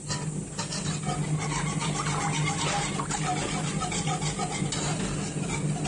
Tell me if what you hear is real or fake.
real